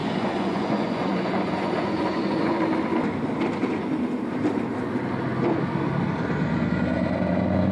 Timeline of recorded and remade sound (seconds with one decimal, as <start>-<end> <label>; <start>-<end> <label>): 0.0-2.6 remade; 2.6-7.7 recorded